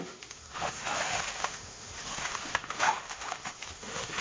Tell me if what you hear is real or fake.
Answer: fake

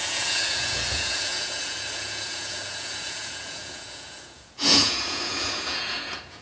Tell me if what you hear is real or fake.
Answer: fake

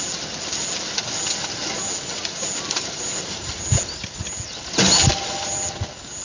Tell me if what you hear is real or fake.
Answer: real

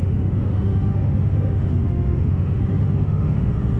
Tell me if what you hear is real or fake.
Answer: fake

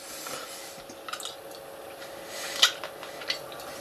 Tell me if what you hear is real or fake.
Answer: real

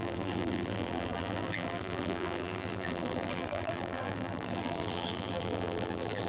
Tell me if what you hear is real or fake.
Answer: fake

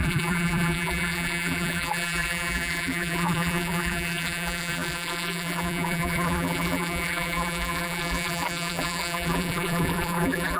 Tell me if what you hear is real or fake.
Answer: fake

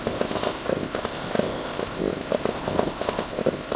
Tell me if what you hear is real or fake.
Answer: fake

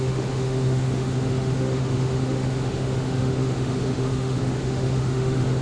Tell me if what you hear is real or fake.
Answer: fake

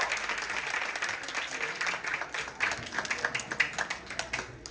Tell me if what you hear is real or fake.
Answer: real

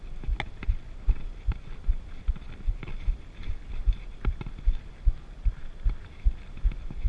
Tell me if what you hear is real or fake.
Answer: real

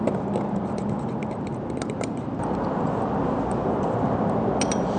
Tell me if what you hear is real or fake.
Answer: real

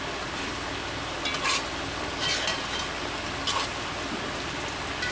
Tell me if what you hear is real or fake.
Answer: real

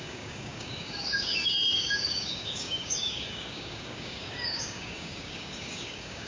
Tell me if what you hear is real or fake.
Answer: fake